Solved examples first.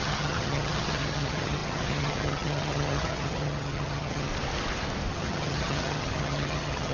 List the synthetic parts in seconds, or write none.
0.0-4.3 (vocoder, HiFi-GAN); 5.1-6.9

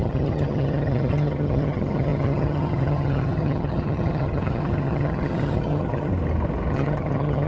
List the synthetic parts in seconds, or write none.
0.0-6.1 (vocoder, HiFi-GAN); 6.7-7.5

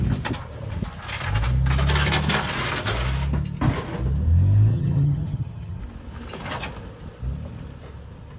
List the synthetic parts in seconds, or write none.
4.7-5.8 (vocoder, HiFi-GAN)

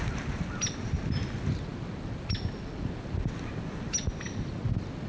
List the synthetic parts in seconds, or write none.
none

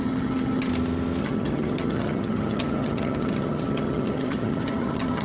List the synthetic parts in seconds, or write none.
0.0-0.7 (vocoder, HiFi-GAN); 1.2-5.2

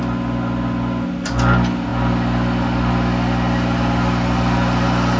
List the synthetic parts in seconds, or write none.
none

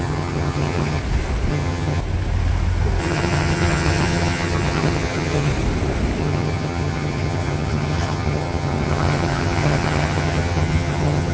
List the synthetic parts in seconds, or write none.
0.0-1.0 (vocoder, HiFi-GAN); 1.5-2.0; 3.0-5.5; 6.2-11.3